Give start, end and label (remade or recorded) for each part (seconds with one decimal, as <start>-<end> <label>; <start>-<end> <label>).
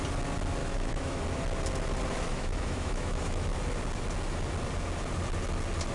0.0-0.6 recorded; 0.6-1.2 remade; 1.2-2.3 recorded; 2.3-3.6 remade; 3.6-5.9 recorded